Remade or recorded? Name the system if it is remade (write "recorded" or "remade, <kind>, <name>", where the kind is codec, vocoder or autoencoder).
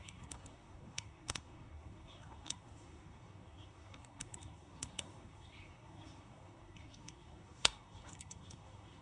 remade, codec, SNAC